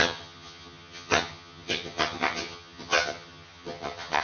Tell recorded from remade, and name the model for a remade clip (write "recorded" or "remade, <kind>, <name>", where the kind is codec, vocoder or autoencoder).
remade, vocoder, HiFi-GAN